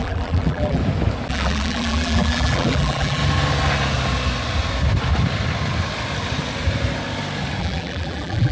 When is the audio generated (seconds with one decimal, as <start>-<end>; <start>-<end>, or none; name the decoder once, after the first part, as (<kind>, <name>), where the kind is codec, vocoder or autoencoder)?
0.0-0.8 (vocoder, BigVGAN v2); 1.3-3.2; 7.6-8.5